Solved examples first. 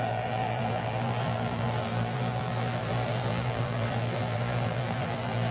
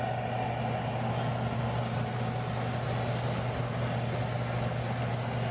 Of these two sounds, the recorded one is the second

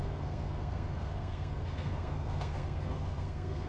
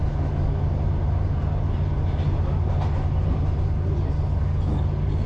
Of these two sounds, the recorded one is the second